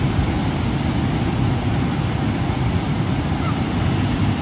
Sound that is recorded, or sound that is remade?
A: recorded